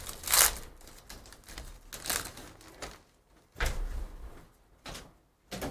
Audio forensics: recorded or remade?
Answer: recorded